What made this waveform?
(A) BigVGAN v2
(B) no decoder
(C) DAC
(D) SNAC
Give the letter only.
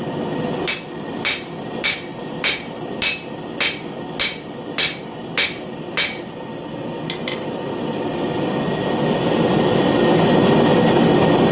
B